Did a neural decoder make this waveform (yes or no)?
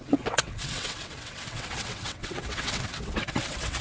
yes